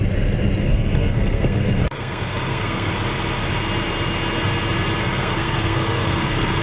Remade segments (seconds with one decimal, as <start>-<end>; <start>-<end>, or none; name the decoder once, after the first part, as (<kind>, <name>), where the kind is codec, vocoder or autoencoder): 0.6-2.9 (codec, SNAC); 5.0-6.6